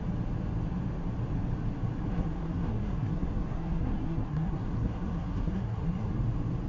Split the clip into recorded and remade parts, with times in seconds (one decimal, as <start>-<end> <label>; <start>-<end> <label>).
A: 0.0-2.1 recorded; 2.1-6.1 remade; 6.1-6.7 recorded